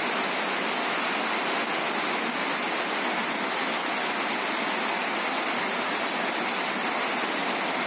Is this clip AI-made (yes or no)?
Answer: no